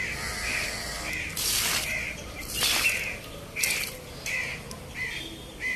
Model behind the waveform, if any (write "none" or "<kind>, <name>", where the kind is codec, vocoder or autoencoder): none